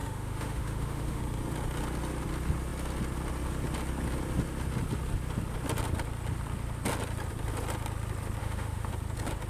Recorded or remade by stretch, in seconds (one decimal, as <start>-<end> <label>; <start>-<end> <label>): 0.0-1.2 remade; 1.2-8.4 recorded; 8.4-8.9 remade; 8.9-9.5 recorded